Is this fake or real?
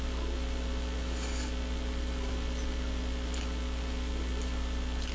real